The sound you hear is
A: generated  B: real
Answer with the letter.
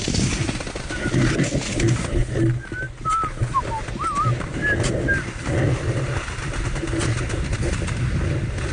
B